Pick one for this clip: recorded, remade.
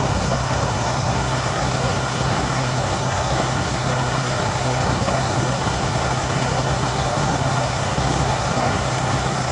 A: remade